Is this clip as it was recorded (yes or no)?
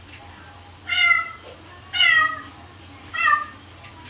yes